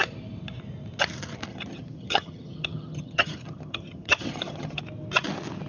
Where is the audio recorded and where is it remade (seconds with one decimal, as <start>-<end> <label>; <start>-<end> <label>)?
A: 0.0-1.5 recorded; 1.5-4.8 remade; 4.8-5.7 recorded